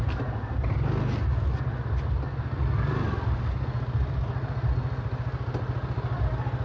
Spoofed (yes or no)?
no